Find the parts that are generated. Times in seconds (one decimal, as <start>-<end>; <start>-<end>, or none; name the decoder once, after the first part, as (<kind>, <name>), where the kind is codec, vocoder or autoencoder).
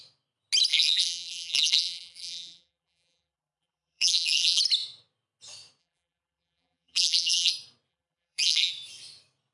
0.7-4.6 (vocoder, BigVGAN v2); 5.8-7.5; 7.9-8.7